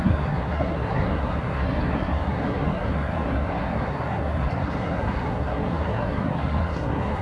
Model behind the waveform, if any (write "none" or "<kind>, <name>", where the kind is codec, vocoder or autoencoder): codec, SNAC